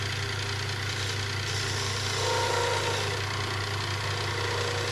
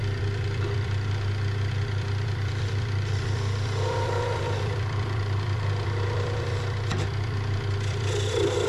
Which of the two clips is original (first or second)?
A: first